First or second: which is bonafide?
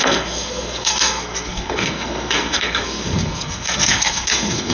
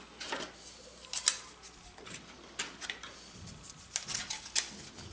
second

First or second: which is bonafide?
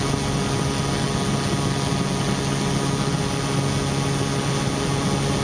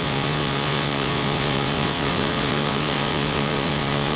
first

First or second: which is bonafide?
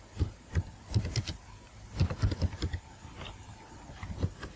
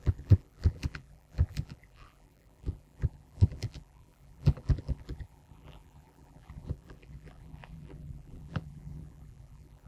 first